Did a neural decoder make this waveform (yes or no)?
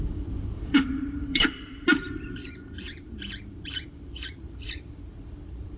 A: yes